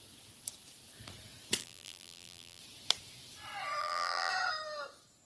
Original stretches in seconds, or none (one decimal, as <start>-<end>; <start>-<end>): 0.0-1.6; 2.6-3.8; 4.3-5.3